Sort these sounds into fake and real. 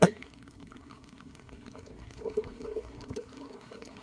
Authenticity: fake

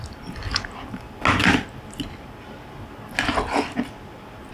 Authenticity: real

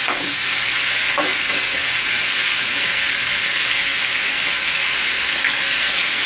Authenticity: fake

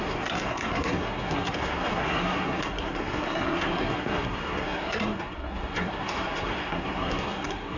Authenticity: fake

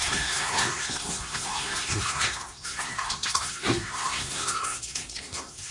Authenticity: fake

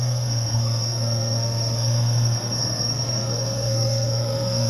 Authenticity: fake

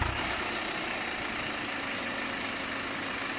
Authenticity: real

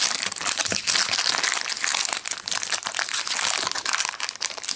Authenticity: real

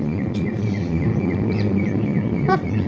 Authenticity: fake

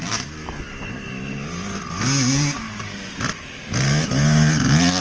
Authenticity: real